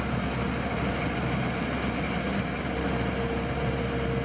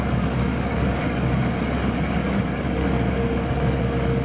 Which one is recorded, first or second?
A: first